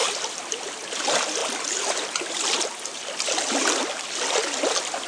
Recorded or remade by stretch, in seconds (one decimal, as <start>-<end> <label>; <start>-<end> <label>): 0.0-5.1 recorded